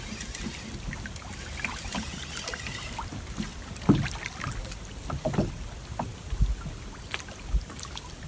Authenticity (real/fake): real